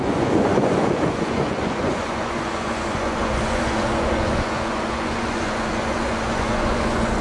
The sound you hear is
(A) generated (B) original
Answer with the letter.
A